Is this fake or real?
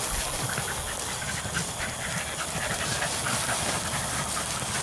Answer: real